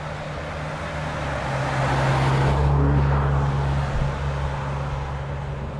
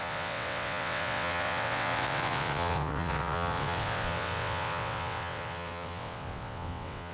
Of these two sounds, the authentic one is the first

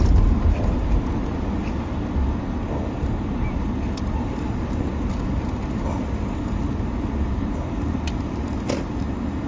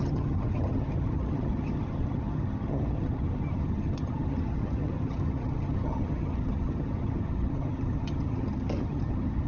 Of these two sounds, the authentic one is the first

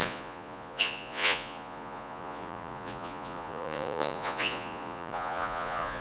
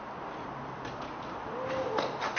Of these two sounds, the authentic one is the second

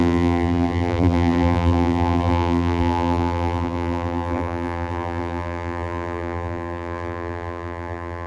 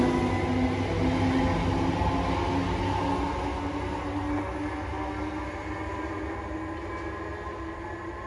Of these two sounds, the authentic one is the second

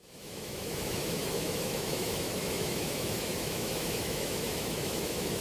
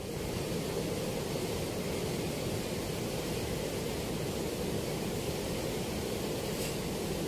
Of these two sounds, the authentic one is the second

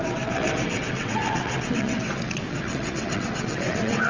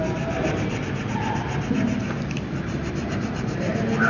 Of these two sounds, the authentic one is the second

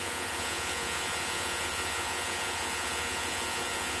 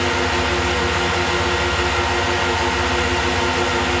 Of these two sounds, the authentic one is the second